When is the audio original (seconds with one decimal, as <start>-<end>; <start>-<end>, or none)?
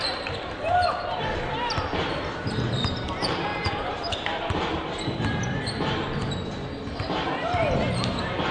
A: none